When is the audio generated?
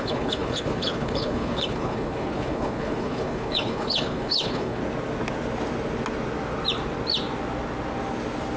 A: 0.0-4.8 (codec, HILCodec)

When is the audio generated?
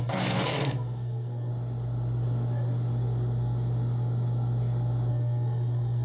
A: 0.0-1.5 (codec, SNAC); 5.1-6.0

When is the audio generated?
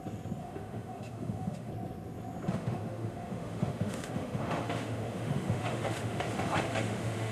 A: 0.4-1.7 (autoencoder, DAC-VAE); 2.5-7.3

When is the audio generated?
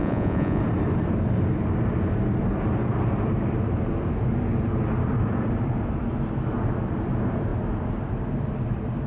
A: 0.0-0.6 (vocoder, Vocos)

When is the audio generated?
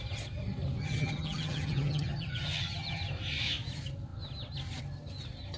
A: 0.8-3.0 (vocoder, HiFi-GAN)